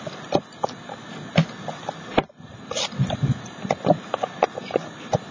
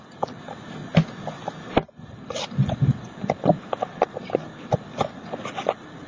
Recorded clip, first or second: second